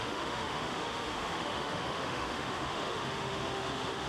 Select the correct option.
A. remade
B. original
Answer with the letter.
A